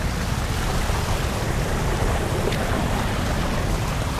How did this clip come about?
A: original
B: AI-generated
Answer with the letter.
A